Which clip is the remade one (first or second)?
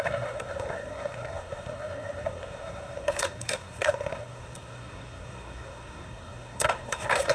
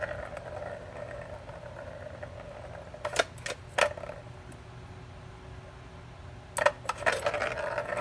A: first